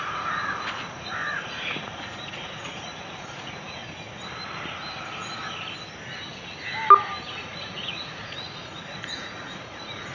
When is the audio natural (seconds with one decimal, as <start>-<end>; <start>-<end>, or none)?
3.8-7.3